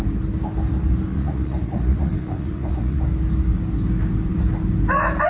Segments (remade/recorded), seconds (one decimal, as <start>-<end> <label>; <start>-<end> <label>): 0.0-1.1 recorded; 1.1-3.0 remade; 3.0-5.3 recorded